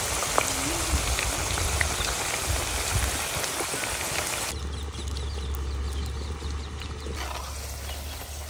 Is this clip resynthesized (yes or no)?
no